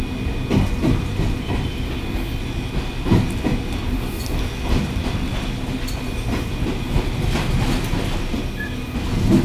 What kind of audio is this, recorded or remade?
recorded